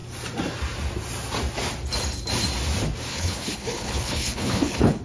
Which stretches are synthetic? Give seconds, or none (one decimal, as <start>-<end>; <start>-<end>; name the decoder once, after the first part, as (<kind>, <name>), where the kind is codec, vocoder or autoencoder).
3.1-5.0 (codec, HILCodec)